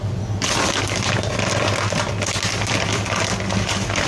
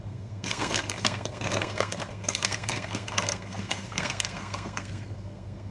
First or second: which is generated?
second